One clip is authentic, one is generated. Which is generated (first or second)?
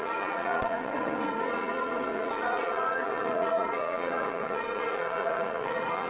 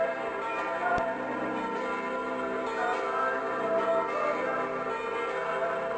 first